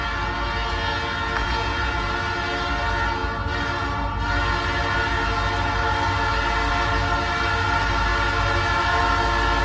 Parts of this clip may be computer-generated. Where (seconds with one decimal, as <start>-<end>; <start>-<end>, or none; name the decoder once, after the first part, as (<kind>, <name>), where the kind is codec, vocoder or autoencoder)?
1.4-2.1 (vocoder, Vocos)